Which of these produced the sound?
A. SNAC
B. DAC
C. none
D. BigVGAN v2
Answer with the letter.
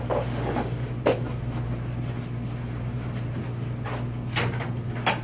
C